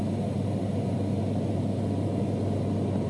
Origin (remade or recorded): recorded